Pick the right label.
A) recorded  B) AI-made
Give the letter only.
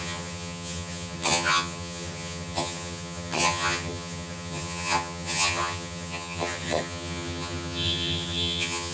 B